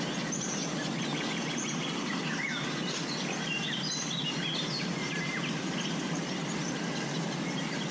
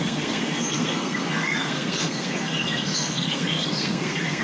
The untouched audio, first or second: first